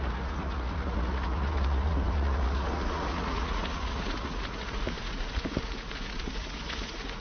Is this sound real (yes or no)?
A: no